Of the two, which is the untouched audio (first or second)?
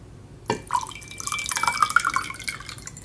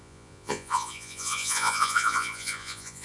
first